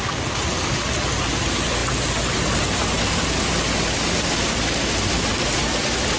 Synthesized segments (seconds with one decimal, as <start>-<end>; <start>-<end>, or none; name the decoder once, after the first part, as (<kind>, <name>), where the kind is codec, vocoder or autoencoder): none